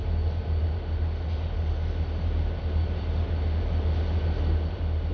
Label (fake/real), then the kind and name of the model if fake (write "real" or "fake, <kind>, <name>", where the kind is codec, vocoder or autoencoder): real